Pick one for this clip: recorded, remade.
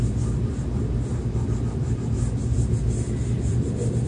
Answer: recorded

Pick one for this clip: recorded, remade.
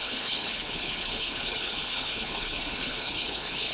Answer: remade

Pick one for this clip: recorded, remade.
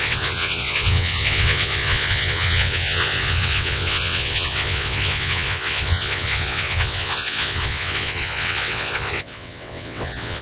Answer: remade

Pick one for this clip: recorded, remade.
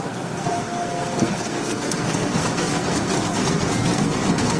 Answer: remade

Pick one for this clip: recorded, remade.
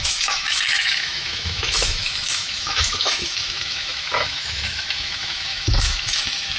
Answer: remade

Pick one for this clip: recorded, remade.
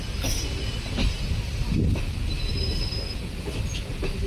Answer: recorded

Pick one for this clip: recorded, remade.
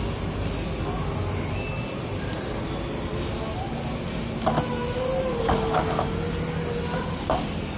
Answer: recorded